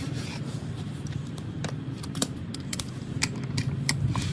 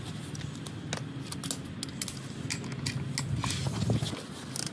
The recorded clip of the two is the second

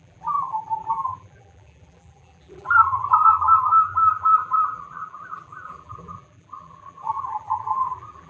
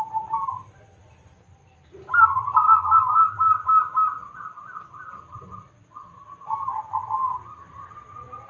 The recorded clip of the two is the second